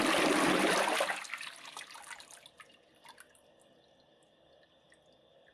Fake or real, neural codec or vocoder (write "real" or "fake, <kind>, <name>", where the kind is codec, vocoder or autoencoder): real